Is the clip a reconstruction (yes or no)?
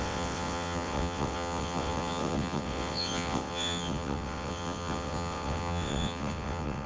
yes